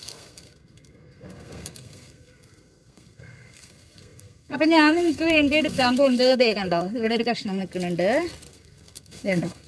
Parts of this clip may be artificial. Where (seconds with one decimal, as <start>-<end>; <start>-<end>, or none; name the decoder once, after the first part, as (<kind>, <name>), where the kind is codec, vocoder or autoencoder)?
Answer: 0.0-7.6 (codec, SNAC); 8.5-9.7

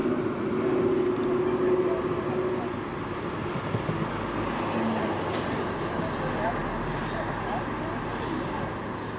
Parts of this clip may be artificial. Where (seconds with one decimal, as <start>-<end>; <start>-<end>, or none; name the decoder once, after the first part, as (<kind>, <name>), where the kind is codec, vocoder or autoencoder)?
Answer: none

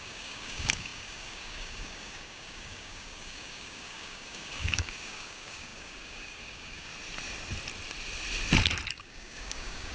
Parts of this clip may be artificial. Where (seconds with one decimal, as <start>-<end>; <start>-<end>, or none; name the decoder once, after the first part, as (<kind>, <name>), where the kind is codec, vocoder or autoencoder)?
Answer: 0.0-6.9 (codec, DAC); 8.9-9.9

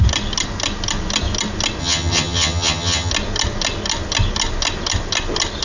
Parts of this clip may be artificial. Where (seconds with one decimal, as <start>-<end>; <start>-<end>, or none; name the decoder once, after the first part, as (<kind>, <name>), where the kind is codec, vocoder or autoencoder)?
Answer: 1.8-3.1 (vocoder, HiFi-GAN)

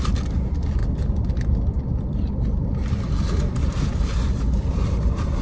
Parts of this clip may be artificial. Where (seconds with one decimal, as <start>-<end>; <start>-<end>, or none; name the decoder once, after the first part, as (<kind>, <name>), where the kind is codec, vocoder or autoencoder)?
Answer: 0.0-0.8 (vocoder, BigVGAN v2); 1.3-5.4

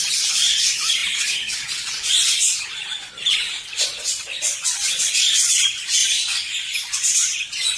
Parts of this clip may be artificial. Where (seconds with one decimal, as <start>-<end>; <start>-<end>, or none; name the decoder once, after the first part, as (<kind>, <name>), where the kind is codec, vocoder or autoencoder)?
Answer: 0.0-6.0 (vocoder, Vocos); 6.9-7.8

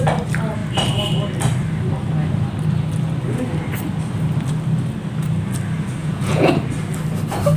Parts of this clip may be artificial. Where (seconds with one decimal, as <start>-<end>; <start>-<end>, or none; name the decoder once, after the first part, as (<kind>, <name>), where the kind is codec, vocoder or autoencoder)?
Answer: 6.0-6.5 (vocoder, Vocos)

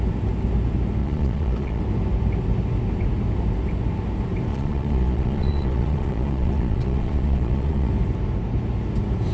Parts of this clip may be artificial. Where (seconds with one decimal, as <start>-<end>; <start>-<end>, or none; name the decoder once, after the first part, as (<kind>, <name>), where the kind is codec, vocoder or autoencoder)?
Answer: 1.0-1.8 (vocoder, Vocos); 4.5-7.9